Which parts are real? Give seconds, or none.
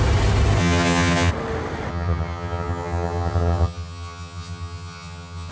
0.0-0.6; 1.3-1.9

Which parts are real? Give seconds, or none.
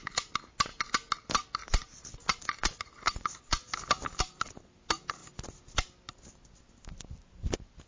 0.0-7.9